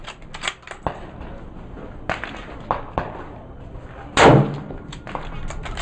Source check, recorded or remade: recorded